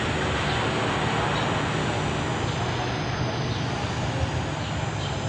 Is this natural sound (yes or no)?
yes